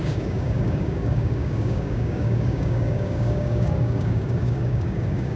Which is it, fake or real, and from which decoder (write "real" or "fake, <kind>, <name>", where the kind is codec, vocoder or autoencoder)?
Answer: fake, codec, DAC